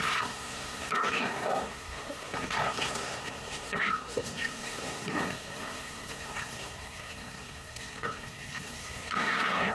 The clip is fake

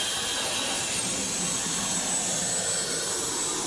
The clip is real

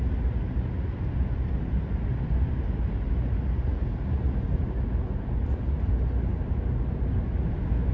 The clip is real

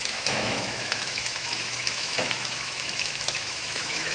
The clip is fake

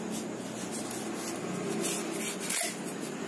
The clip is real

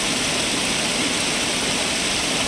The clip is real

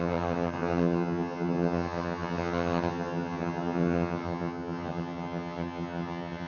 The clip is fake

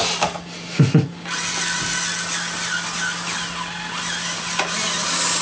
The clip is real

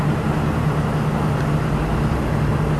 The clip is real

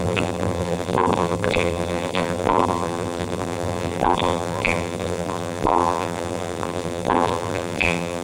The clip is fake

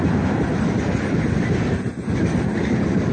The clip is real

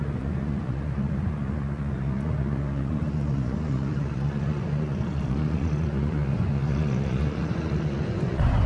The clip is fake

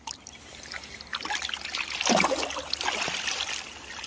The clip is real